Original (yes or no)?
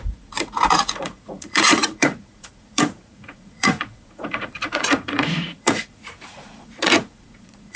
no